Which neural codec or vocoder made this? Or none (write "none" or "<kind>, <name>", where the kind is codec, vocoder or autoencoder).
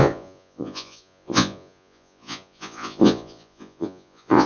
vocoder, Vocos